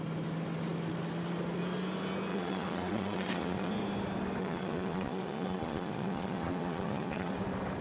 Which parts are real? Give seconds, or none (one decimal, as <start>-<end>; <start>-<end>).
0.0-2.3; 3.7-4.4; 7.3-7.8